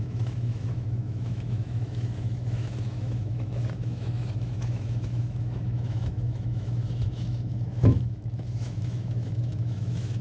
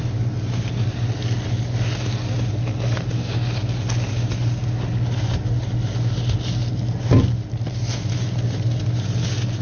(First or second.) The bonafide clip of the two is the second